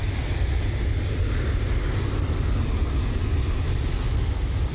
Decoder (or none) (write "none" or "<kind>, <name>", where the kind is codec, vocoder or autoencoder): none